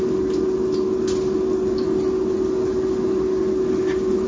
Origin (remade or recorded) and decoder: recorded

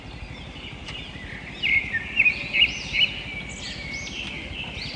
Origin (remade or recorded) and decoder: recorded